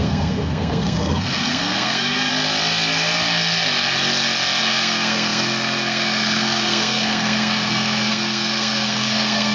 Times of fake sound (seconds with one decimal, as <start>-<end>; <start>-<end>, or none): 0.0-2.3; 4.6-9.5